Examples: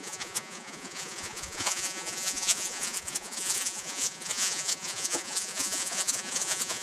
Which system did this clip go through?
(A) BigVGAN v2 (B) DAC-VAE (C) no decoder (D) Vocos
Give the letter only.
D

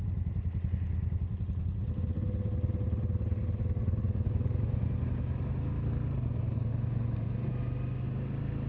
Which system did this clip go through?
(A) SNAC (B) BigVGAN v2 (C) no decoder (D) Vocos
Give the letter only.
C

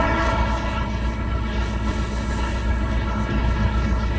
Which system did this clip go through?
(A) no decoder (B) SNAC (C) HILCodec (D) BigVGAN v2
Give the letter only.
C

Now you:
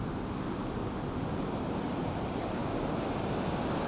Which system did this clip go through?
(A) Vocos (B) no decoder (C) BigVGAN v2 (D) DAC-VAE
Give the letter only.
B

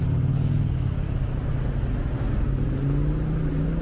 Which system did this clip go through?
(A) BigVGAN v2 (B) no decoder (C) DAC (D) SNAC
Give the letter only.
B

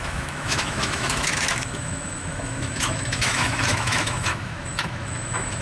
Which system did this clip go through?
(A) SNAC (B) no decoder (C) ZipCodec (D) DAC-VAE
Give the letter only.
D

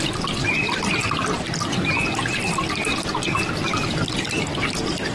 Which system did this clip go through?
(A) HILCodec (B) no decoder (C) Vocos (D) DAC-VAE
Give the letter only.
B